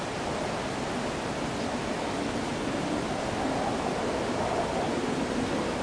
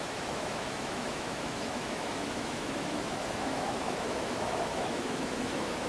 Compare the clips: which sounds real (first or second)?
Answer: first